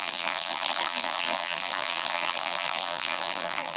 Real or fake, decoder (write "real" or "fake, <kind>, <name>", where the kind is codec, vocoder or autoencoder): fake, vocoder, BigVGAN v2